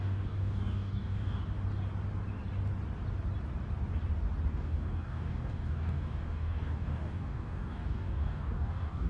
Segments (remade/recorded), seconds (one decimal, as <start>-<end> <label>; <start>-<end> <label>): 0.0-1.4 remade; 1.4-4.5 recorded; 4.5-9.1 remade